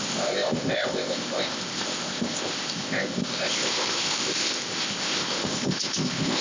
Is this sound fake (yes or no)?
yes